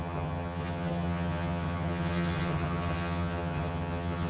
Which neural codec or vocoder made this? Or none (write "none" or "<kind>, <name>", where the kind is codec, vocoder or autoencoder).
vocoder, HiFi-GAN